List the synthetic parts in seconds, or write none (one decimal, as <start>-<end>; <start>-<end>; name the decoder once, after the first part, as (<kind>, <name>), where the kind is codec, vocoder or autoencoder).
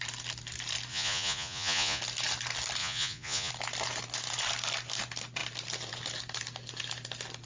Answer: 0.9-2.0 (vocoder, Vocos); 2.8-3.5